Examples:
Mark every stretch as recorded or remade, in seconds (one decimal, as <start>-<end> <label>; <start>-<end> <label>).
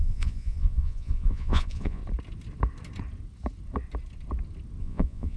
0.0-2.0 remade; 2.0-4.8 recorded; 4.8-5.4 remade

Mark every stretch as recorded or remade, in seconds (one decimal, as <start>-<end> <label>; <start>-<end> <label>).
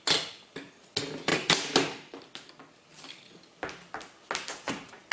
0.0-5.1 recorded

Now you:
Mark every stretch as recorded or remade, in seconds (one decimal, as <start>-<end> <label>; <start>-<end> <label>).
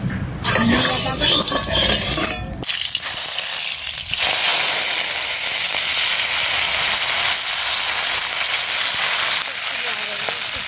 0.0-10.7 recorded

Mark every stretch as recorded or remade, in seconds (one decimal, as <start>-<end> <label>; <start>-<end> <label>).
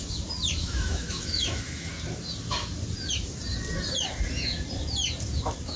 0.0-0.6 recorded; 0.6-1.9 remade; 1.9-5.8 recorded